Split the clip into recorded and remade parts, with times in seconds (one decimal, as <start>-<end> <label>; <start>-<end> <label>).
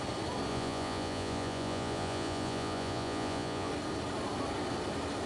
0.0-0.5 recorded; 0.5-3.7 remade; 3.7-5.3 recorded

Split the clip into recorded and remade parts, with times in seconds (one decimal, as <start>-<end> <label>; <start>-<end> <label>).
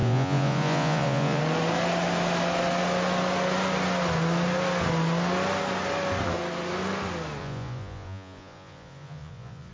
0.0-1.4 remade; 1.4-7.4 recorded; 7.4-9.7 remade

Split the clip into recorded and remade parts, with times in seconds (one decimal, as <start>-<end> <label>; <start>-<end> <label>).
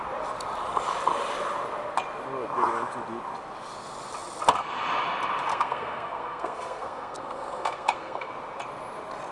0.0-5.5 recorded; 5.5-8.3 remade; 8.3-9.3 recorded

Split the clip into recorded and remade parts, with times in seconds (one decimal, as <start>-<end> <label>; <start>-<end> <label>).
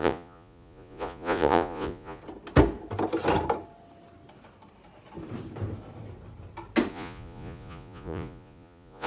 0.0-2.2 remade; 2.2-6.9 recorded; 6.9-9.1 remade